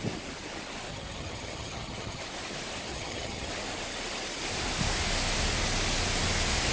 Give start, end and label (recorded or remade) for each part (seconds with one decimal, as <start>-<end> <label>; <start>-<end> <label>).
0.0-0.9 recorded; 0.9-2.2 remade; 2.2-2.9 recorded; 2.9-3.5 remade; 3.5-6.7 recorded